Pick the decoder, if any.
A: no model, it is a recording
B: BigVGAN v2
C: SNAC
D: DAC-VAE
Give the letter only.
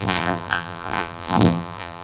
B